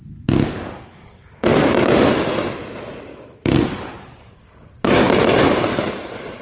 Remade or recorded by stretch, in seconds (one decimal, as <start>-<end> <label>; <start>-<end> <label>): 0.0-0.8 recorded; 0.8-1.5 remade; 1.5-3.3 recorded; 3.3-6.4 remade